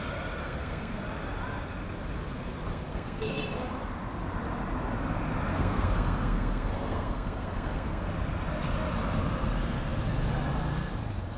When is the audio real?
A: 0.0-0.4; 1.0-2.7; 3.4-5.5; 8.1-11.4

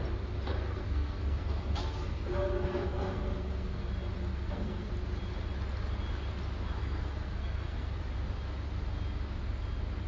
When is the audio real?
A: 0.0-0.5; 3.9-4.3; 4.9-6.8; 8.0-10.1

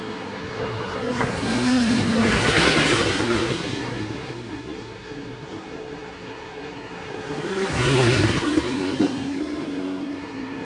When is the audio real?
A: none

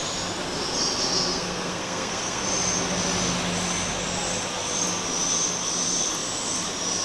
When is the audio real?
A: 0.0-1.3; 2.4-7.0

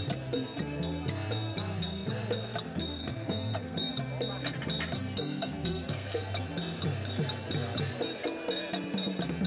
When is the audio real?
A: 0.0-3.0; 3.9-5.0; 6.2-9.5

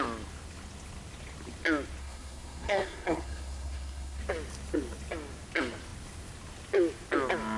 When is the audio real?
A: 0.0-2.0; 4.2-7.6

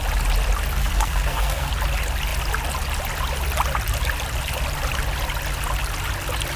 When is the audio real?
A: 0.0-0.8; 1.7-6.6